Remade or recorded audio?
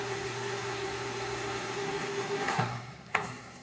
remade